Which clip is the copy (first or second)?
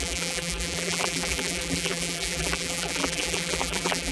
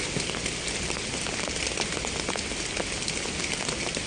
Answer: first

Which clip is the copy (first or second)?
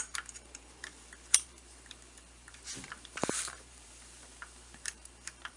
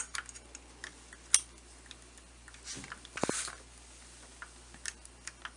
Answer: first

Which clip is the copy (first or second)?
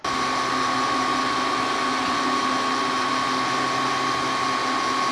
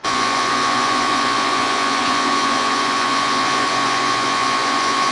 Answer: second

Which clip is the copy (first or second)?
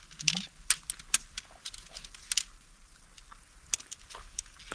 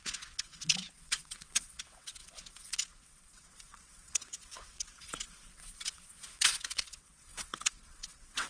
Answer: second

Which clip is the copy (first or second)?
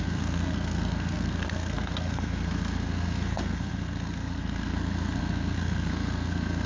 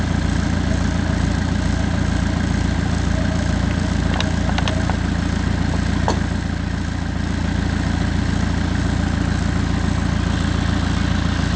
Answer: first